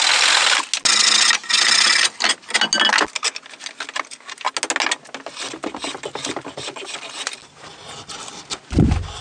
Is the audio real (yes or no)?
yes